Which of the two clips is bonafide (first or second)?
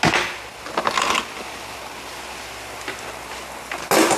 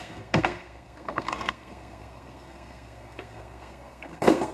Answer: first